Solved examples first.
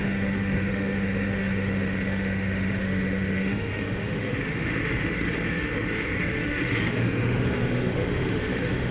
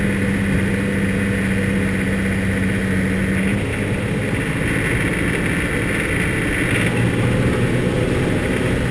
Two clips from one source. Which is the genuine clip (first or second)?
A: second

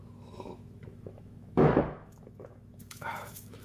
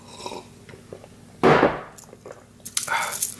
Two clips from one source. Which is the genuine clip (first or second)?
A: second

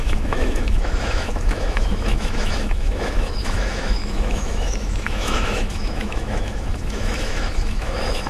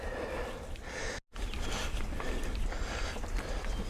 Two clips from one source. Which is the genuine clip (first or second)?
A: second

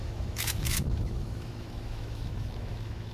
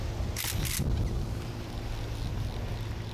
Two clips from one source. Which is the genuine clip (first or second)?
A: second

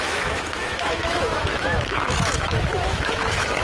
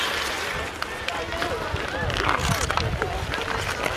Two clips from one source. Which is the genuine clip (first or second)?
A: second